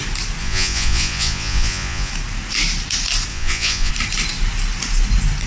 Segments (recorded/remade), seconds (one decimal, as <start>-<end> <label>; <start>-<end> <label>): 0.0-0.4 recorded; 0.4-2.1 remade; 2.1-3.3 recorded; 3.3-3.9 remade; 3.9-5.5 recorded